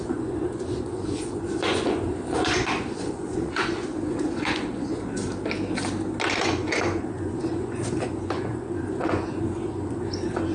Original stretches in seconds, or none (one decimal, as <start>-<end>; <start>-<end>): 5.2-6.3